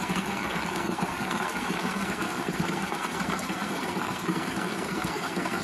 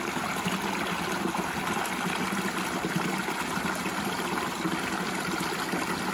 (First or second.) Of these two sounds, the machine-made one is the first